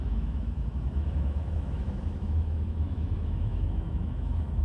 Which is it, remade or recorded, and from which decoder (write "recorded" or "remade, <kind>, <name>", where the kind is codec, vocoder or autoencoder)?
remade, autoencoder, DAC-VAE